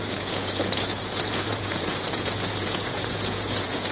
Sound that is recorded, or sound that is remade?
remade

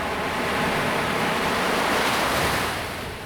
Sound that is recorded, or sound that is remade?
recorded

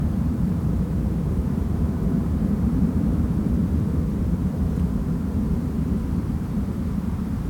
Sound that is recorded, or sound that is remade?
remade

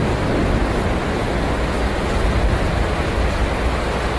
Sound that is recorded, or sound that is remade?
recorded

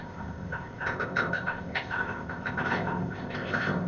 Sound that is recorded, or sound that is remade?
remade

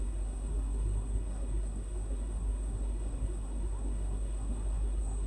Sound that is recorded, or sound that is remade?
remade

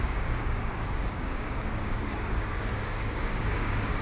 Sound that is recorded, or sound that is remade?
remade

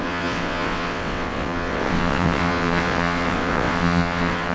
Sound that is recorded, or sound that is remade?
remade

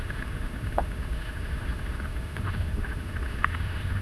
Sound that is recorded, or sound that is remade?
remade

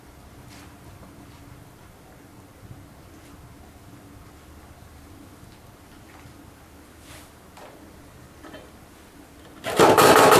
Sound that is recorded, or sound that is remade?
recorded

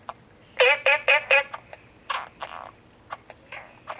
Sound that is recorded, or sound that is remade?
recorded